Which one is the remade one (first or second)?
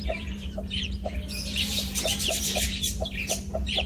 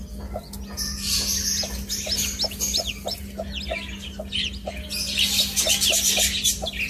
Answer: first